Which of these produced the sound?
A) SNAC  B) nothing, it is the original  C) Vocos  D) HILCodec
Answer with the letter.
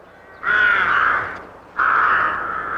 B